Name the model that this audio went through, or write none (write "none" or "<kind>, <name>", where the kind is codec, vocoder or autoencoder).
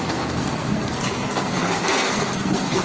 codec, SNAC